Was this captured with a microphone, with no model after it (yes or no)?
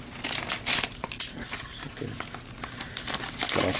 yes